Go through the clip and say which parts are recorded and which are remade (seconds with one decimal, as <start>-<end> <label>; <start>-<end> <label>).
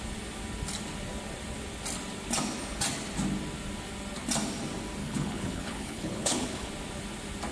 0.0-5.0 recorded; 5.0-6.7 remade; 6.7-7.5 recorded